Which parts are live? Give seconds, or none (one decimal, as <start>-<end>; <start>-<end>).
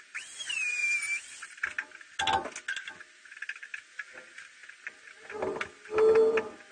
0.0-6.7